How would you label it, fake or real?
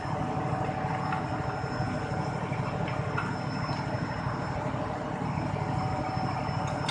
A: real